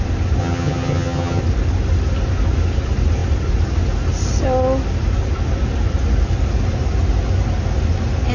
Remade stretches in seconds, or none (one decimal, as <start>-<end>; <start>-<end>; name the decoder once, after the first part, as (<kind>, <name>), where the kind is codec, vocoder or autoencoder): 0.4-1.4 (vocoder, HiFi-GAN)